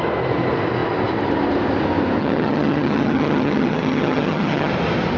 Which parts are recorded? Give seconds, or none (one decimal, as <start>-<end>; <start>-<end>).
0.0-2.2; 4.7-5.2